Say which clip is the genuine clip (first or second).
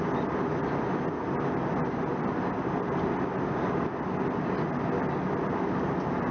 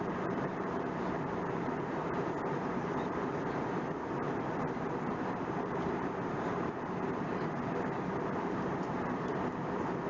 first